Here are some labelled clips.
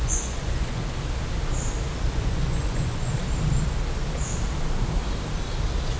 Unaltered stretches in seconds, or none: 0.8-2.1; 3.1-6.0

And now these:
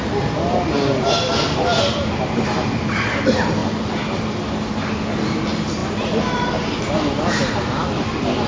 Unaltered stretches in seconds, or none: 0.0-8.5

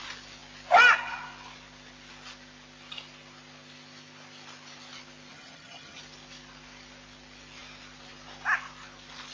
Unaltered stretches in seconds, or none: 0.0-5.3; 6.0-9.3

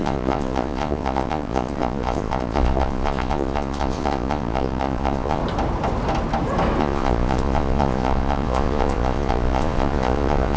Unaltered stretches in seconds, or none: 5.4-6.8

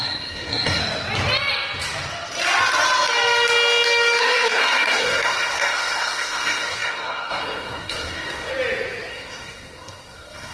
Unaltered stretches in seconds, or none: 0.8-4.2; 8.5-9.1